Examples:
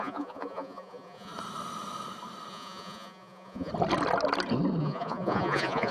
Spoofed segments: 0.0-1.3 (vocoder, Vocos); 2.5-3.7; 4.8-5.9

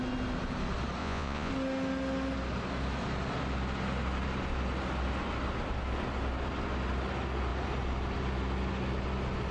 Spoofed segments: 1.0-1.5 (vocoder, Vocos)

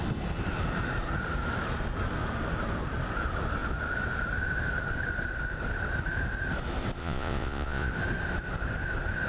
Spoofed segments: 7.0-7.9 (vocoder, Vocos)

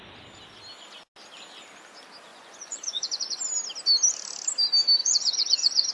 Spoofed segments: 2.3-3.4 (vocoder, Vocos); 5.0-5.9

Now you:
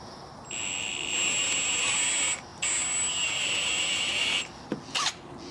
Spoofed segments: none

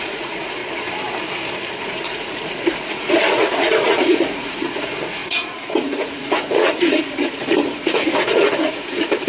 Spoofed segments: 0.0-0.6 (vocoder, Vocos); 1.8-9.3